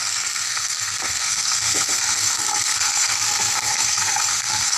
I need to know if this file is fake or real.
fake